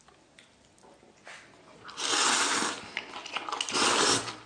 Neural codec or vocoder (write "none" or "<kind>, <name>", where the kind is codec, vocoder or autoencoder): none